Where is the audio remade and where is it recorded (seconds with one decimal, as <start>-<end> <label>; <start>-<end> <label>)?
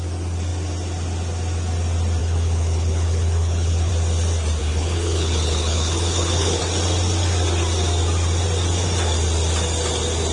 0.0-2.2 recorded; 2.2-3.9 remade; 3.9-4.6 recorded; 4.6-6.6 remade; 6.6-10.3 recorded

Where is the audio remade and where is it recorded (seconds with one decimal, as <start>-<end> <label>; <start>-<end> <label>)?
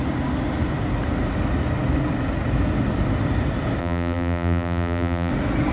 0.0-3.8 recorded; 3.8-5.3 remade; 5.3-5.7 recorded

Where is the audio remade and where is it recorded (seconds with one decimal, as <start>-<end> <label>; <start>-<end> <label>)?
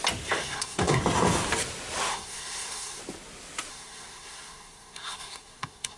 0.0-0.4 recorded; 0.4-1.0 remade; 1.0-2.1 recorded; 2.1-3.0 remade; 3.0-3.7 recorded; 3.7-6.0 remade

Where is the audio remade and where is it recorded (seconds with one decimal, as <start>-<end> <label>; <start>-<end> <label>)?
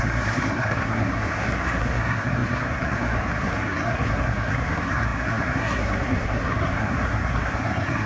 0.0-8.1 remade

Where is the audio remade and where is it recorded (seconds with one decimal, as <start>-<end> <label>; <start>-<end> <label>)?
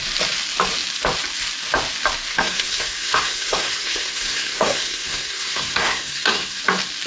0.0-2.3 recorded; 2.3-6.6 remade; 6.6-7.1 recorded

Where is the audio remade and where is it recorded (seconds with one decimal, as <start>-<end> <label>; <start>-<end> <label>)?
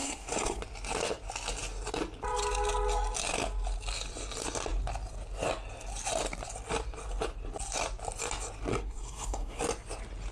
0.0-0.6 remade; 0.6-8.7 recorded; 8.7-9.6 remade; 9.6-10.3 recorded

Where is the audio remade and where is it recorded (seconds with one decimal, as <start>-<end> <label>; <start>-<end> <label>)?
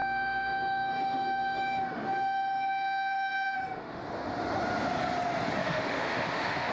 0.0-4.0 remade; 4.0-5.6 recorded; 5.6-6.7 remade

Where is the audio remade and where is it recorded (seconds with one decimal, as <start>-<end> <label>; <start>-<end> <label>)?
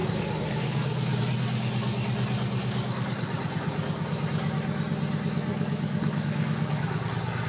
0.0-1.2 remade; 1.2-2.6 recorded; 2.6-3.2 remade; 3.2-5.5 recorded; 5.5-7.0 remade; 7.0-7.5 recorded